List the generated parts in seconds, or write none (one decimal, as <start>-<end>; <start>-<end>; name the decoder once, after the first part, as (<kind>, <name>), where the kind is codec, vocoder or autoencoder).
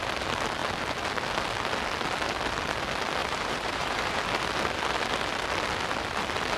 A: 3.2-4.2 (vocoder, BigVGAN v2)